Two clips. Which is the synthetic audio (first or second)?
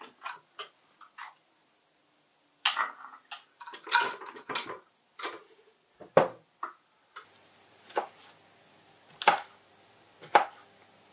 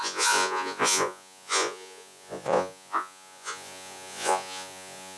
second